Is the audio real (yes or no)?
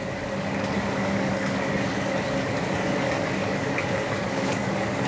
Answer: no